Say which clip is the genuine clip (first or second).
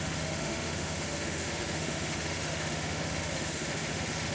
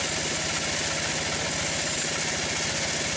second